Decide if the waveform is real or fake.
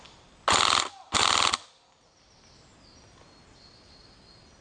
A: real